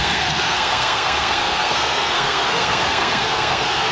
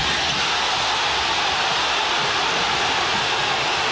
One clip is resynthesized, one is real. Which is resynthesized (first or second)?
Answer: first